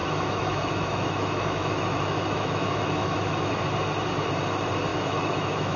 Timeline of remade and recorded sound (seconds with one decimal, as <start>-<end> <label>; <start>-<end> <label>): 0.0-3.5 remade; 3.5-4.9 recorded; 4.9-5.8 remade